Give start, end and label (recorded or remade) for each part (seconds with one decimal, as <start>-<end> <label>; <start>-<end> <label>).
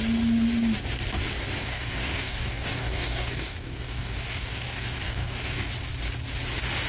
0.0-1.6 recorded; 1.6-5.7 remade; 5.7-6.9 recorded